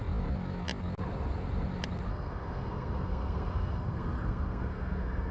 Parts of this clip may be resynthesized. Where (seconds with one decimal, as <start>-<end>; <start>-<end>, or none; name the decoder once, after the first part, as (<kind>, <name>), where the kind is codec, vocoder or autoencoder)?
2.1-5.3 (codec, SNAC)